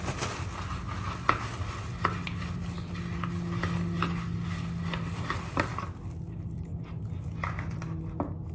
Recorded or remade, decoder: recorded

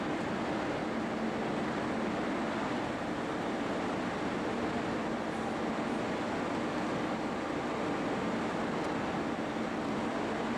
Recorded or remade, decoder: recorded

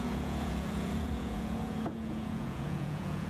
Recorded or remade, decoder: remade, vocoder, Vocos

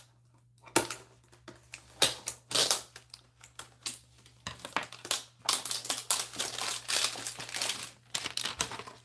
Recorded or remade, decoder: recorded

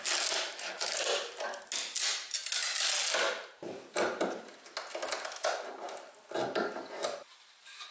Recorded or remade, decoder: recorded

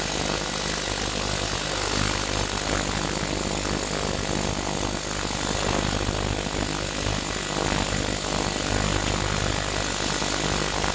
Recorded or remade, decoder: recorded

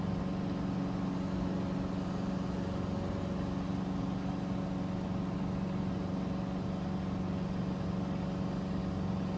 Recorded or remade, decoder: recorded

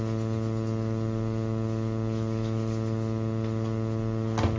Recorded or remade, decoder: recorded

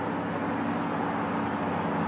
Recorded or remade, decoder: recorded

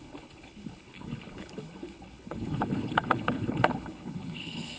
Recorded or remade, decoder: remade, codec, HILCodec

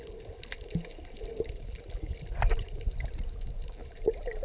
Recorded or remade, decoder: remade, vocoder, BigVGAN v2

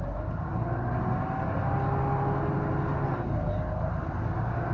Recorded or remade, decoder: recorded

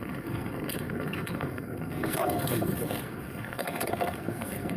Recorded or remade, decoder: remade, codec, SNAC